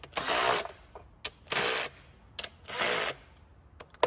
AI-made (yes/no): no